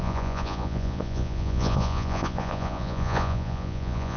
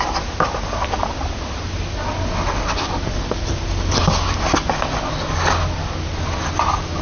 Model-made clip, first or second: first